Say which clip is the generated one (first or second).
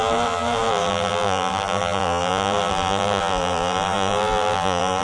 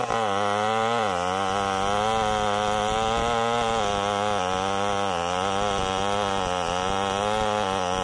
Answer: first